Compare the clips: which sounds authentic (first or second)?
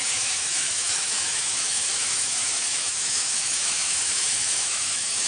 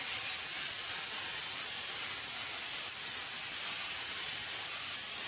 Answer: second